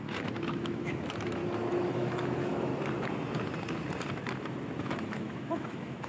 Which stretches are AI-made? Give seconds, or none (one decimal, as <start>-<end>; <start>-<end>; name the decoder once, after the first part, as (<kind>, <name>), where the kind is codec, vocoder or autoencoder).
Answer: 0.0-1.4 (autoencoder, DAC-VAE); 1.9-2.7; 4.8-6.1